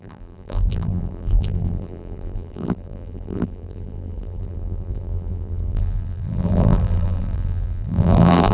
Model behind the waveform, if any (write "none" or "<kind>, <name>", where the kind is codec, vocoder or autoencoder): vocoder, BigVGAN v2